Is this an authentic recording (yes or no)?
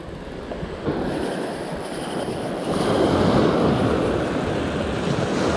yes